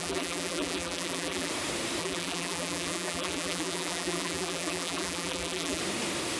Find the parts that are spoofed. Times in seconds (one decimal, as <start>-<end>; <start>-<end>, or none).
0.0-1.5; 2.0-5.8